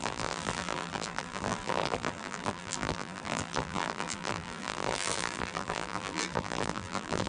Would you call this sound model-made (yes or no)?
yes